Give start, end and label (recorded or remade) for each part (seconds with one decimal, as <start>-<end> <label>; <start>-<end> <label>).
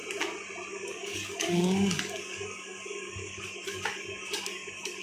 0.0-0.7 recorded; 0.7-5.0 remade